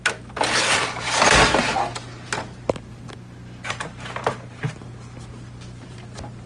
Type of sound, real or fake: real